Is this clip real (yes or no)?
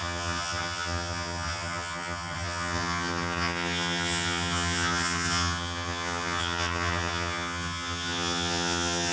no